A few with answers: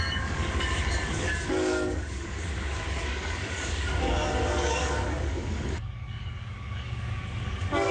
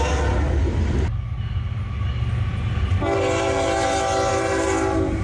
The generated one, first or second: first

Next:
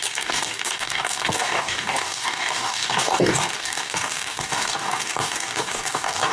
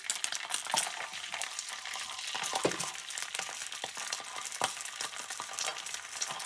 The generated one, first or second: first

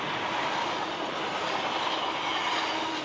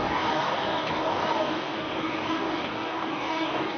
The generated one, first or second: second